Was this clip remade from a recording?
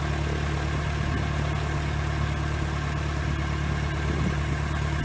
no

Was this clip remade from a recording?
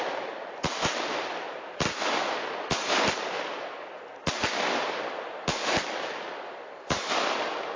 no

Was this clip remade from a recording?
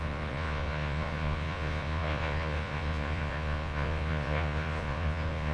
yes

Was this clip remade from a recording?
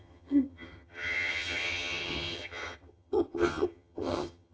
yes